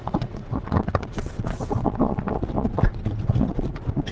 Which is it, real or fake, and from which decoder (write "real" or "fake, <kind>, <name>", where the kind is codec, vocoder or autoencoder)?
fake, vocoder, WaveNeXt